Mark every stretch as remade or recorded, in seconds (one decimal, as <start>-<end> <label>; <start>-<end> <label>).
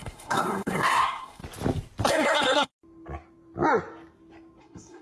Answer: 0.0-1.4 remade; 1.4-2.1 recorded; 2.1-2.7 remade; 2.7-4.6 recorded; 4.6-5.0 remade